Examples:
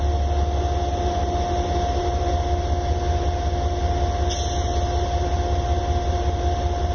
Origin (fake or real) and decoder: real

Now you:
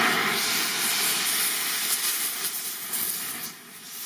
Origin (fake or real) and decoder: real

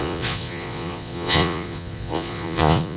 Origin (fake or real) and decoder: fake, vocoder, Vocos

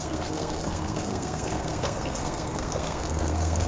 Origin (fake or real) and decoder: fake, codec, SNAC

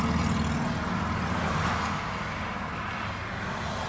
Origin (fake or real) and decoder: real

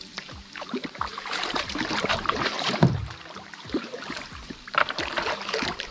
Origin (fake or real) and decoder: fake, vocoder, BigVGAN v2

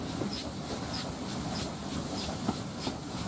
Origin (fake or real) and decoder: real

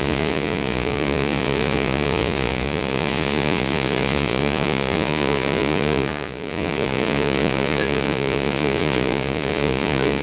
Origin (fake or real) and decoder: fake, vocoder, Vocos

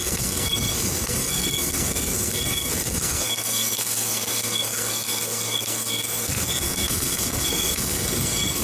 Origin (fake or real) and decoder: fake, codec, SNAC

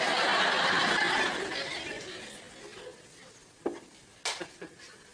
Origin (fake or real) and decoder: real